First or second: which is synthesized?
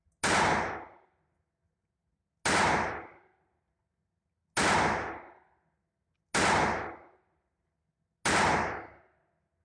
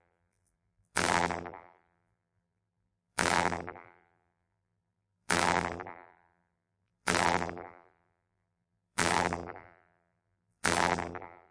second